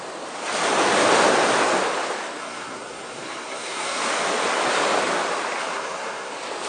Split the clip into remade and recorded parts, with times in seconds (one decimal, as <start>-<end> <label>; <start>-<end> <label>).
0.0-2.4 recorded; 2.4-4.1 remade; 4.1-5.6 recorded; 5.6-6.3 remade; 6.3-6.7 recorded